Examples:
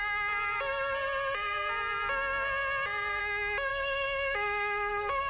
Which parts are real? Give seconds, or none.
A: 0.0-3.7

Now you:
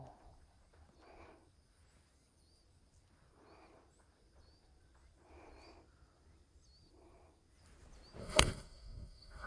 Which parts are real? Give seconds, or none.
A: 0.0-8.2

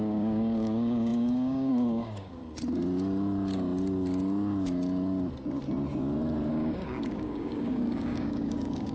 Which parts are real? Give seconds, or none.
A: 2.4-6.5

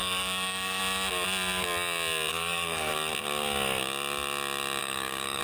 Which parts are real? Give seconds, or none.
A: 0.8-2.3; 2.9-4.8

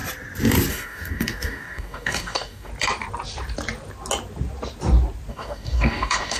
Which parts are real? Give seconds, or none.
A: 0.0-0.7; 2.7-5.3

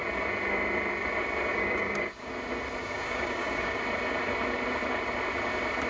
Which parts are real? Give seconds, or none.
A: 0.0-1.5; 2.3-2.8; 3.8-5.9